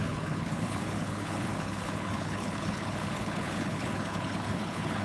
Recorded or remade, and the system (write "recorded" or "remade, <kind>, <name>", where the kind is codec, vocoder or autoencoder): remade, codec, HILCodec